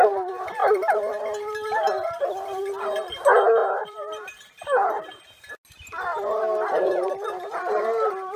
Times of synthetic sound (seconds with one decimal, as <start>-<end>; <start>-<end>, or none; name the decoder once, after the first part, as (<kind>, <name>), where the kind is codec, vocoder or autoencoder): 0.6-2.6 (vocoder, BigVGAN v2); 3.6-4.6; 6.1-8.4